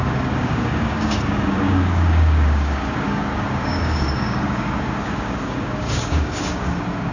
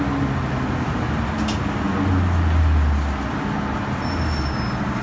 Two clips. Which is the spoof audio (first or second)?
first